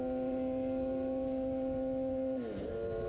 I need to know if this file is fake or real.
real